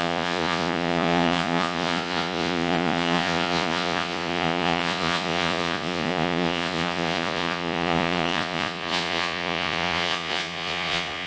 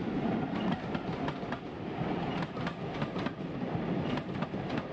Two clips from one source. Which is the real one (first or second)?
second